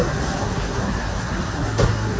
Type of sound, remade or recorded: remade